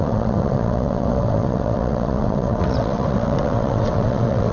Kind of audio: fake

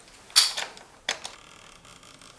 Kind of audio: real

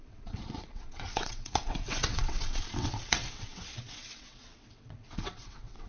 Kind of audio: fake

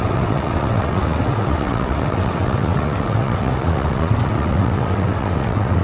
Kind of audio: fake